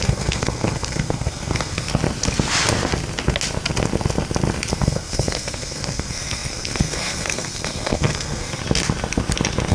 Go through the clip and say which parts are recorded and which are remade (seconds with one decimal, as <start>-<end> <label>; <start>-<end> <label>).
0.0-1.9 remade; 1.9-4.7 recorded; 4.7-8.6 remade; 8.6-9.7 recorded